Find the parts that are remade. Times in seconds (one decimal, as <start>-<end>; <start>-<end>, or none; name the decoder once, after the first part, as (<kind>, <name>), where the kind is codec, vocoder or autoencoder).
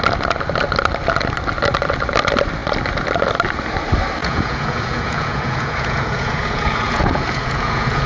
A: 4.2-8.1 (vocoder, Vocos)